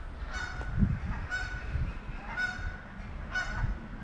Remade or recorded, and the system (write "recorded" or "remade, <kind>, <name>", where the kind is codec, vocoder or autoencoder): recorded